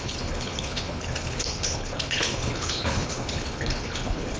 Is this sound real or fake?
fake